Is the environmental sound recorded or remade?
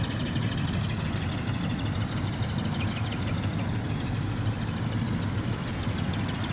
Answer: recorded